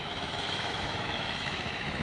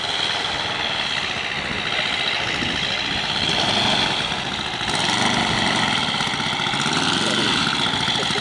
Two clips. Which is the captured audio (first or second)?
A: second